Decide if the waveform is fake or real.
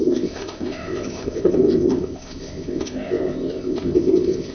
fake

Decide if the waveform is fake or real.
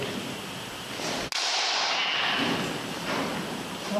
real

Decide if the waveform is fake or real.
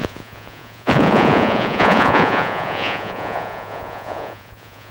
fake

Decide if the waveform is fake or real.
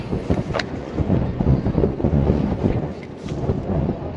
fake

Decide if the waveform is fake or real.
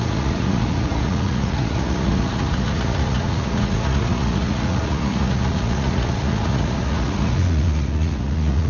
fake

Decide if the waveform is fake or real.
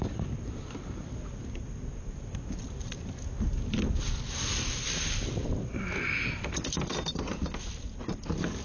real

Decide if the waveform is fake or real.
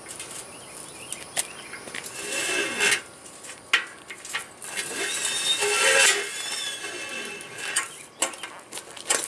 real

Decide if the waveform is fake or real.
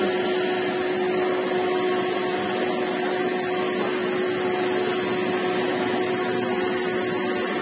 real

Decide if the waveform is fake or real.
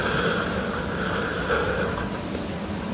real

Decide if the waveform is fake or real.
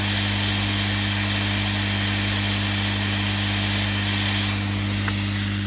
real